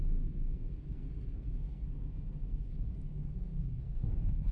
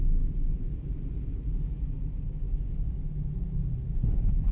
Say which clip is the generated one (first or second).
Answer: first